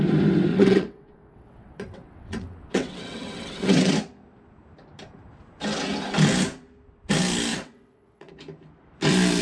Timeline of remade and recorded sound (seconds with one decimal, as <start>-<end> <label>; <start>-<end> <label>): 0.0-0.5 recorded; 0.5-3.9 remade; 3.9-7.5 recorded; 7.5-8.3 remade; 8.3-9.4 recorded